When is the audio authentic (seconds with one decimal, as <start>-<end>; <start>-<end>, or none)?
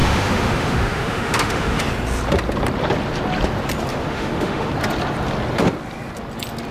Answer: 1.8-3.9; 4.7-6.7